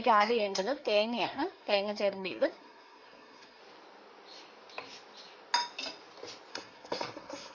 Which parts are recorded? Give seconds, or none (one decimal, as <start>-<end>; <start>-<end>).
3.6-6.5